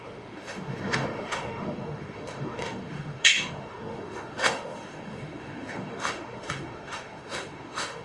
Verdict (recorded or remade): remade